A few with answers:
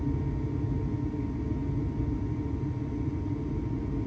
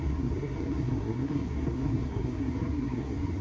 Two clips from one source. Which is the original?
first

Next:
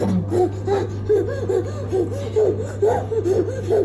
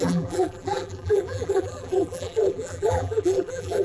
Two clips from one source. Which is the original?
first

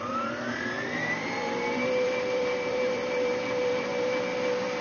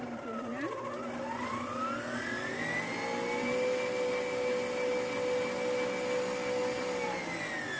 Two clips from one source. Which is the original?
second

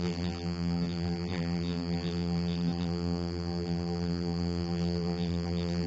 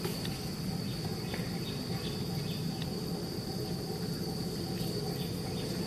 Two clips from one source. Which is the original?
second